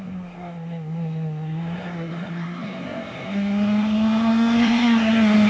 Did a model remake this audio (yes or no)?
yes